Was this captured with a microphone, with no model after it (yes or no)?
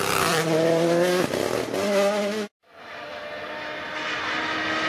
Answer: yes